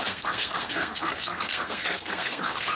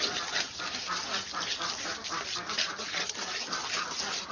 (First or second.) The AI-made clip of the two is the first